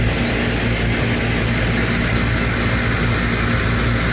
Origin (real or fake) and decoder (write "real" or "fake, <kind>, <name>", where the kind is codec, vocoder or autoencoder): real